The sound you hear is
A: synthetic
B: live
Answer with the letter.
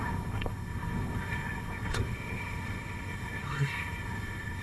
A